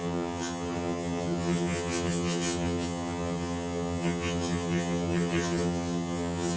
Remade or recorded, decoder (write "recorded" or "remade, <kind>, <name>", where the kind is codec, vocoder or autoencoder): remade, vocoder, HiFi-GAN